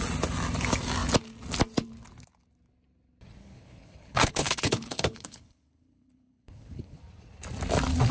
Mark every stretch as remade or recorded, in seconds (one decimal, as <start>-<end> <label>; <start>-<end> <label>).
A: 0.0-3.4 recorded; 3.4-7.0 remade; 7.0-8.1 recorded